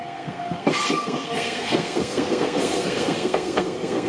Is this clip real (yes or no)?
no